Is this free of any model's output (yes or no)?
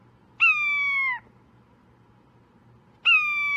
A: yes